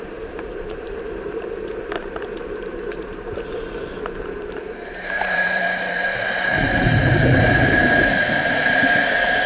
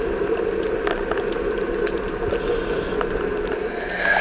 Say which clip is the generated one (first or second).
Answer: first